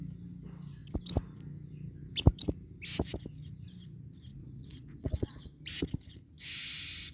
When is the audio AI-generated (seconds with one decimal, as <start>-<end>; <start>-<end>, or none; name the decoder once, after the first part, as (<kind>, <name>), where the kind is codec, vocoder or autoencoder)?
4.3-5.6 (vocoder, Vocos)